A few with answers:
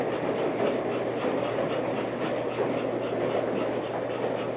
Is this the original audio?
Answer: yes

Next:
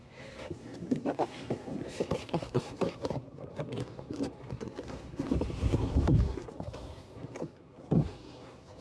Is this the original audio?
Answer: no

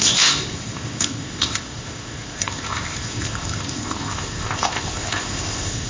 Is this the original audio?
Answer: no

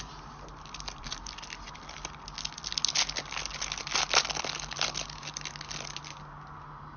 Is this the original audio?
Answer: yes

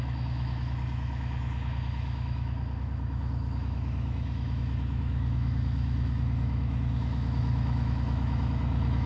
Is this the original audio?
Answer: no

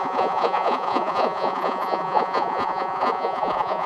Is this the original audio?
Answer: no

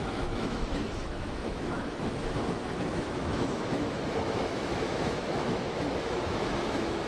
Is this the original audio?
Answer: no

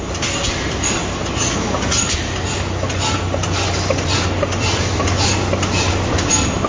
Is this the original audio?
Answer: yes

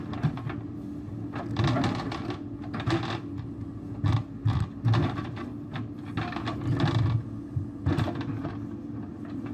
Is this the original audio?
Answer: yes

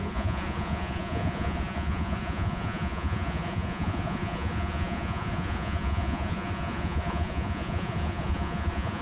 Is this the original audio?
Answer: no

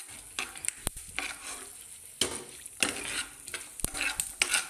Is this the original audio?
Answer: yes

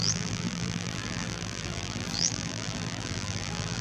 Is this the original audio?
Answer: no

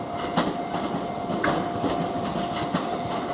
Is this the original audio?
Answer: yes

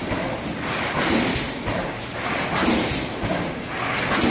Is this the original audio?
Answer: yes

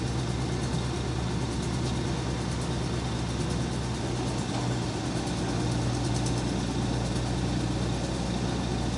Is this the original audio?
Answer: yes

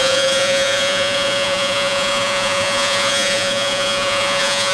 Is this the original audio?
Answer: no